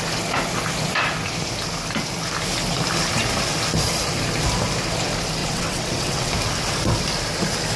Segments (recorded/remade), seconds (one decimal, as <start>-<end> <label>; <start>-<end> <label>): 0.0-5.4 recorded; 5.4-6.3 remade; 6.3-7.8 recorded